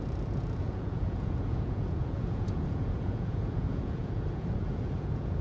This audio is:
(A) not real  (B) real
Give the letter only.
A